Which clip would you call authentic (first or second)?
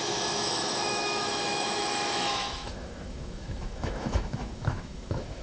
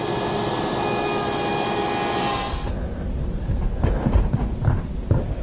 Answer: second